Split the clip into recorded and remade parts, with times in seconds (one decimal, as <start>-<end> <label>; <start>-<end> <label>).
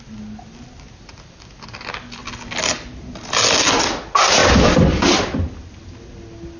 0.0-6.6 recorded